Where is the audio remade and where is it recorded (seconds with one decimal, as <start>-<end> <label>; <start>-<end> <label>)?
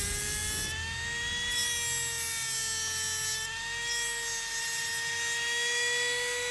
0.0-6.5 recorded